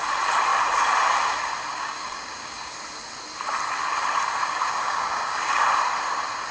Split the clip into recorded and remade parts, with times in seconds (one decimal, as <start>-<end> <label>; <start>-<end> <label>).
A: 0.0-1.7 recorded; 1.7-2.7 remade; 2.7-4.4 recorded; 4.4-5.6 remade; 5.6-6.5 recorded